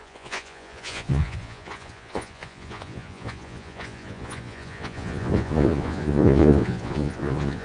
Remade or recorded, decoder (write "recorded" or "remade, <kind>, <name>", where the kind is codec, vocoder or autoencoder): remade, vocoder, Vocos